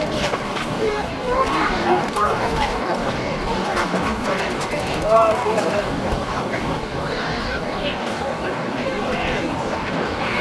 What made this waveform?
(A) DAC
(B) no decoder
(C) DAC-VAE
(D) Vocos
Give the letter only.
A